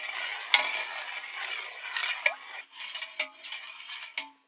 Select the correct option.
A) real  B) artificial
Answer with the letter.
A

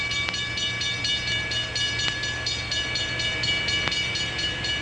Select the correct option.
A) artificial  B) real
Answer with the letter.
B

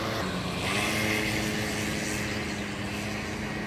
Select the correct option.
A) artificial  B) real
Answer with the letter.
B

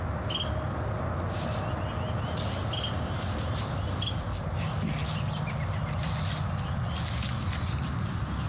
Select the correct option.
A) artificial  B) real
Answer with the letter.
B